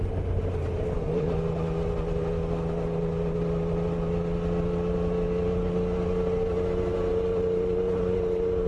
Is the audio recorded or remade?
recorded